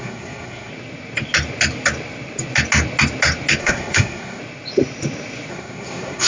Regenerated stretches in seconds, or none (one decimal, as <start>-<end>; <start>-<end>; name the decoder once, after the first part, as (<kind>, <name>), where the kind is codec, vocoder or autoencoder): 0.0-0.7 (codec, SNAC); 3.6-4.4; 5.5-6.3